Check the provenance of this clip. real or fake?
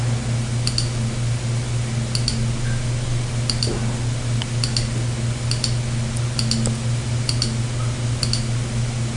real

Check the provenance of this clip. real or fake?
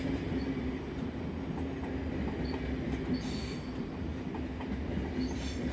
real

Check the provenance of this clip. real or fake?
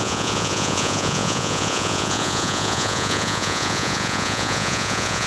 fake